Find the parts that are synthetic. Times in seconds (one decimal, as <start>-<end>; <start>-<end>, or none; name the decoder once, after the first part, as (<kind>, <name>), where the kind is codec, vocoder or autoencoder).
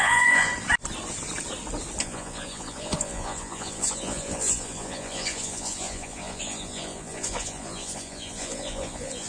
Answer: 0.0-0.5 (vocoder, Vocos); 2.0-9.3